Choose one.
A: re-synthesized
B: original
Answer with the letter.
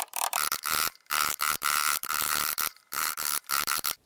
A